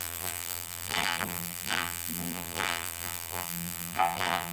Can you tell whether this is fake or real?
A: fake